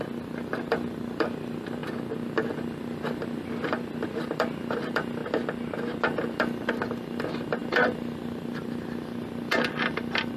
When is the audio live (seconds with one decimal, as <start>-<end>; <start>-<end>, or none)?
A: 1.8-2.5; 5.2-6.3